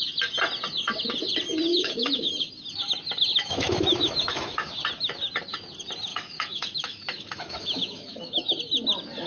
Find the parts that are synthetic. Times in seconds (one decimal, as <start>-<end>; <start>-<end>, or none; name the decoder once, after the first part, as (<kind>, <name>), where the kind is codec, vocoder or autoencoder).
1.7-2.3 (autoencoder, DAC-VAE); 3.3-4.7; 6.1-8.6

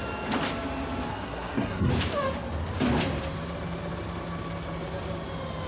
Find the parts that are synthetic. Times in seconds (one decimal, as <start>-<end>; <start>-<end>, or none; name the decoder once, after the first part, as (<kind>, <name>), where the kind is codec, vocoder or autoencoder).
1.1-1.9 (codec, SNAC)

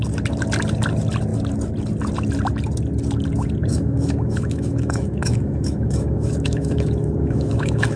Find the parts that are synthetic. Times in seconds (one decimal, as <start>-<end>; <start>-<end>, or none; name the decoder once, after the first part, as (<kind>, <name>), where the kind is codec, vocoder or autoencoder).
3.7-8.0 (autoencoder, DAC-VAE)

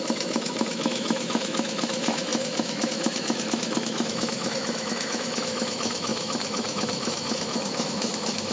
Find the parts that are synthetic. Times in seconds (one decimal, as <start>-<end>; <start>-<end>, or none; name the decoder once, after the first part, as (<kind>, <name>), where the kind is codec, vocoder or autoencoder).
0.0-8.5 (autoencoder, DAC-VAE)